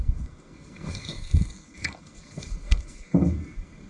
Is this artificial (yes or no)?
yes